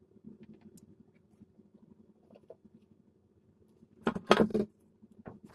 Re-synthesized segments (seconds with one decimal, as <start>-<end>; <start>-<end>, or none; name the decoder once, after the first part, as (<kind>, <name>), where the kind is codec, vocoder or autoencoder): 4.5-5.5 (vocoder, BigVGAN v2)